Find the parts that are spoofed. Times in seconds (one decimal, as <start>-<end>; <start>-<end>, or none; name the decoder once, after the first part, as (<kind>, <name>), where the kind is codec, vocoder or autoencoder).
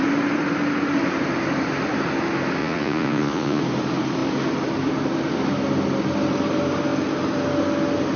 2.6-3.6 (vocoder, Vocos)